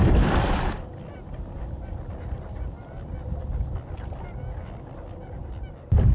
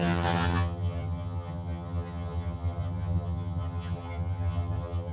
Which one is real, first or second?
first